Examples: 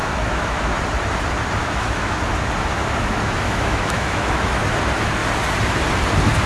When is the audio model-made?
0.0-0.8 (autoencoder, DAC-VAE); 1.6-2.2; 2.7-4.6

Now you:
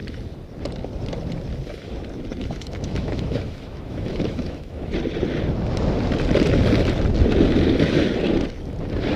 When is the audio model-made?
2.4-4.9 (autoencoder, DAC-VAE)

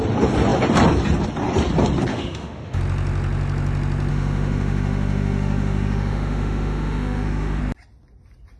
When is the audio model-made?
2.1-2.8 (autoencoder, DAC-VAE); 4.1-7.6

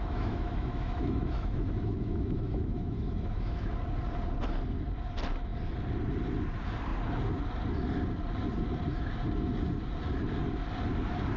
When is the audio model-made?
0.0-3.7 (autoencoder, DAC-VAE)

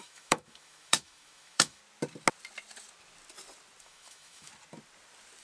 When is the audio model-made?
0.0-1.8 (autoencoder, DAC-VAE); 3.8-4.5

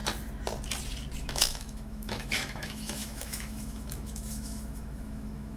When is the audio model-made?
1.2-5.6 (autoencoder, DAC-VAE)